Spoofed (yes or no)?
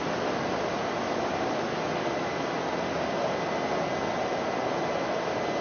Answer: no